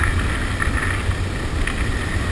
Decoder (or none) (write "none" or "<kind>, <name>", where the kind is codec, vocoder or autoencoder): none